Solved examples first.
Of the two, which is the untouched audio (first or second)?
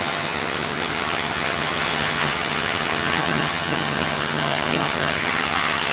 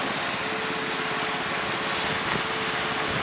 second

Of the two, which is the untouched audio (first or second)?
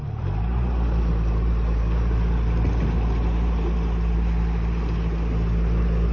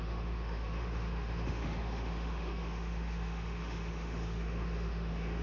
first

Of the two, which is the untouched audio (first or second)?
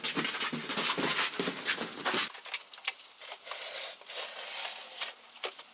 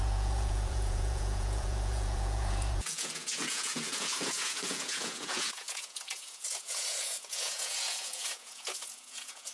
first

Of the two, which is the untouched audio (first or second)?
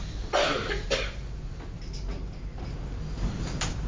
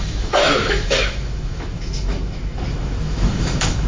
first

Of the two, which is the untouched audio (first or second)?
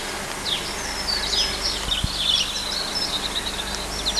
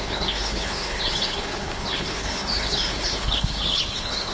first